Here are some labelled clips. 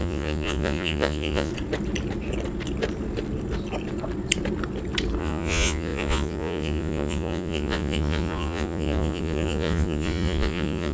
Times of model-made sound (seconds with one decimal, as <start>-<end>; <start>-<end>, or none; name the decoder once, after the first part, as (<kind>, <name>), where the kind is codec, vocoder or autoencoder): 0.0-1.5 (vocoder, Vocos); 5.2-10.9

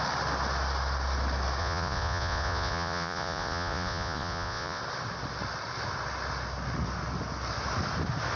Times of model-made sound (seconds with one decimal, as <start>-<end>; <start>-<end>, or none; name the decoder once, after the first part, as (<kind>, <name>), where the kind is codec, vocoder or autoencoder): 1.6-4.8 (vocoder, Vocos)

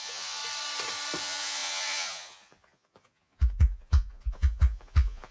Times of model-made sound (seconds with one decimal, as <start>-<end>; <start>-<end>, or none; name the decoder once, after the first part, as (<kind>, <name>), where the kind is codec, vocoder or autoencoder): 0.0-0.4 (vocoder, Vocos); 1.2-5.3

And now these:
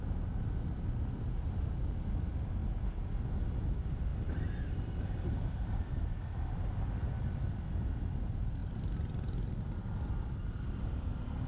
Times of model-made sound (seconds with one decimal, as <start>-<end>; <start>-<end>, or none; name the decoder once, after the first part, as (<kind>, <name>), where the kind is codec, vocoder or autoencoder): none

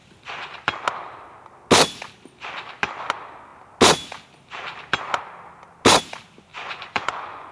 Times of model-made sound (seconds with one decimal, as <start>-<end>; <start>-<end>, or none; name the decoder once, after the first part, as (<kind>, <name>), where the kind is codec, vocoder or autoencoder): 6.5-7.5 (vocoder, Vocos)

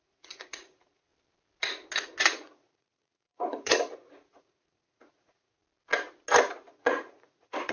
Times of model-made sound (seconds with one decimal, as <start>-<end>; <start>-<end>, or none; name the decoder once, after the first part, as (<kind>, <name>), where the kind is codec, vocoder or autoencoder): 0.0-1.1 (vocoder, Vocos); 2.2-5.6; 6.7-7.7

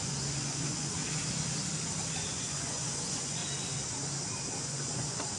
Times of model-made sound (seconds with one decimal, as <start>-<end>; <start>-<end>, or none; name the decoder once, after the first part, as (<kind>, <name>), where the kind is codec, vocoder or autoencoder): 0.0-1.0 (vocoder, Vocos); 2.3-3.4; 4.6-5.4

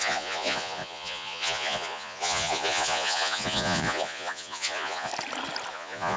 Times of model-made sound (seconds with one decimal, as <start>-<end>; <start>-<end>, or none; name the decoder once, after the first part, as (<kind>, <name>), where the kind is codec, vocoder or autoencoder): 0.0-5.1 (vocoder, Vocos); 5.7-6.2